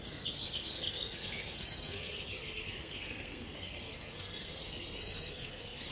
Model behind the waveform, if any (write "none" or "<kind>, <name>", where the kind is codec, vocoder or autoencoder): codec, SNAC